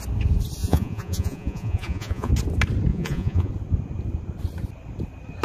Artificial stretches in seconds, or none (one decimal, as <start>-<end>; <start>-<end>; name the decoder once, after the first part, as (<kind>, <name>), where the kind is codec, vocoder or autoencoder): 0.6-2.3 (vocoder, Vocos); 2.9-3.5